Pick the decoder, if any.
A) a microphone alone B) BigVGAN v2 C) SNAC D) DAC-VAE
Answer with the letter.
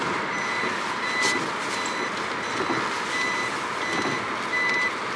A